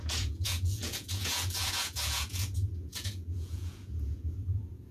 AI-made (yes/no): yes